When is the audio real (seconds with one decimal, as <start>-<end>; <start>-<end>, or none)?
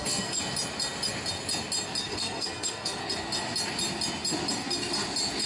0.4-2.0; 3.0-5.5